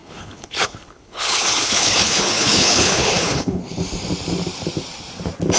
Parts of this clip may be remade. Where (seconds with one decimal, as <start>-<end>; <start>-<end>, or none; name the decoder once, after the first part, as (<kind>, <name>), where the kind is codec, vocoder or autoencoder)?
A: 0.0-3.8 (codec, HILCodec)